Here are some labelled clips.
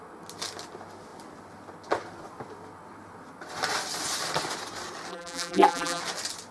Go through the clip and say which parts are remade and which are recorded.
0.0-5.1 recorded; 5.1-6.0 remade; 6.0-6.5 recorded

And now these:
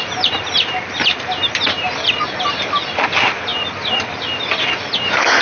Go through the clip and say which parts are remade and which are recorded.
0.0-5.4 recorded